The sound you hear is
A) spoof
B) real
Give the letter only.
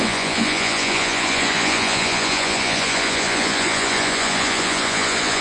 A